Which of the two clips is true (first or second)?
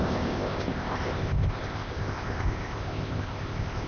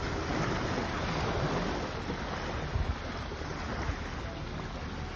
second